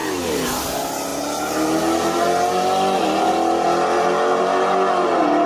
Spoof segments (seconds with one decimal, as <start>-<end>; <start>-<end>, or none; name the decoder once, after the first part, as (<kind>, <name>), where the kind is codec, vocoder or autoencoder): none